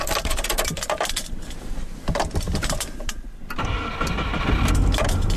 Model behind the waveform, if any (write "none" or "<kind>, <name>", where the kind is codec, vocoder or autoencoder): vocoder, BigVGAN v2